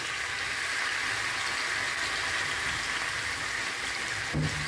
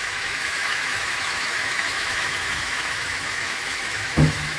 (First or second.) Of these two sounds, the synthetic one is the second